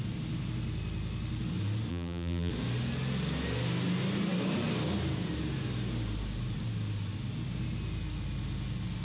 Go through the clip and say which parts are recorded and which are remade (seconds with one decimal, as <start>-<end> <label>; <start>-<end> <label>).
0.0-1.9 recorded; 1.9-2.5 remade; 2.5-9.0 recorded